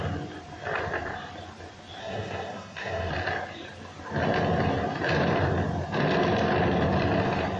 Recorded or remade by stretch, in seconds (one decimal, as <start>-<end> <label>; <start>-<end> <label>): 0.0-2.0 recorded; 2.0-3.1 remade; 3.1-7.6 recorded